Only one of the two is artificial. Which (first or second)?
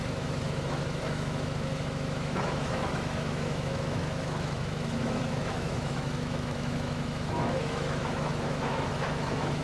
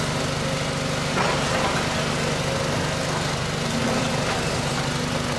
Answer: first